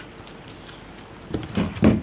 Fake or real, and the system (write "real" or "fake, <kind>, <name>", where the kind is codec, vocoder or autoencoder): real